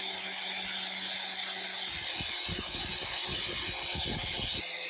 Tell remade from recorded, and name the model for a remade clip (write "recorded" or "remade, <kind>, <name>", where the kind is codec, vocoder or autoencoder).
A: recorded